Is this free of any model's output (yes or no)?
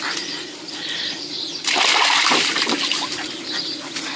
yes